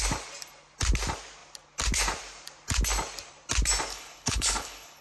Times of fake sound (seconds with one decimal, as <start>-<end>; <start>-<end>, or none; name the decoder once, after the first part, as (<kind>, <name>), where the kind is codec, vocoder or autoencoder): 3.9-5.0 (codec, HILCodec)